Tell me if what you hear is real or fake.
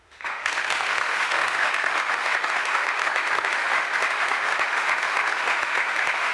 fake